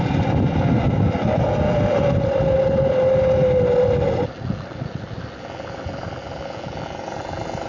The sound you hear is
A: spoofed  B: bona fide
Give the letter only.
B